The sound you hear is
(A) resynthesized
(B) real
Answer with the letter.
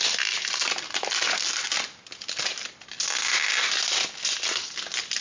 B